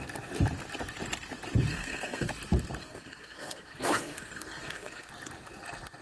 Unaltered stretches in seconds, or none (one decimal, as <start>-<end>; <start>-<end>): 0.0-1.7; 2.3-2.8; 5.1-6.0